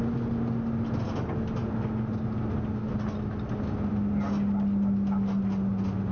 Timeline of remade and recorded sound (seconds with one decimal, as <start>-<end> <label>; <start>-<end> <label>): 0.0-6.1 recorded